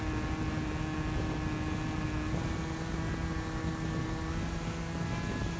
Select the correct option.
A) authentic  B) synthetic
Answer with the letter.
A